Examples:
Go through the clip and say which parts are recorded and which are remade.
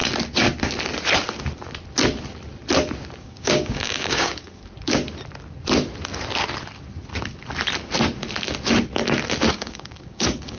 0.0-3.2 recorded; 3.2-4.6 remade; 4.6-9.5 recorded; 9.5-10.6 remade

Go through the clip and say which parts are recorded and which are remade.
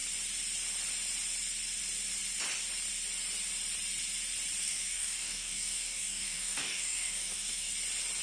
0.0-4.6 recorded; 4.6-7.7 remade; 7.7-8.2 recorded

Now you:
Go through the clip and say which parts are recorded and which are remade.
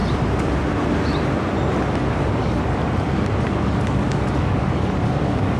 0.0-2.1 recorded; 2.1-2.8 remade; 2.8-3.6 recorded; 3.6-5.6 remade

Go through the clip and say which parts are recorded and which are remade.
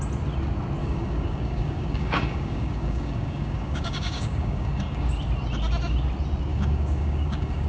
0.0-0.8 recorded; 0.8-5.1 remade; 5.1-6.5 recorded; 6.5-7.7 remade